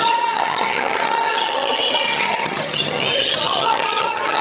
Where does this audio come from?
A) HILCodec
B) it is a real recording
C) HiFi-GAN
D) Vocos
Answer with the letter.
C